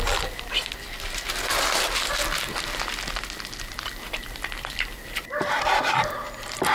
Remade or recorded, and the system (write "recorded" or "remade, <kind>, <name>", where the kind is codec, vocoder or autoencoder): recorded